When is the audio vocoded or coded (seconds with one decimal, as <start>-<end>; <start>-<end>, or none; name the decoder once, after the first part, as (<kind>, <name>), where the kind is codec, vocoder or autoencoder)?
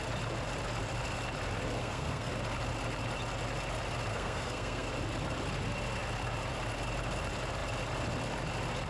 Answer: 1.8-2.3 (codec, SNAC); 4.1-4.9